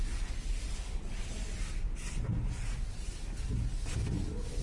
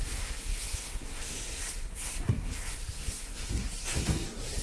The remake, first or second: second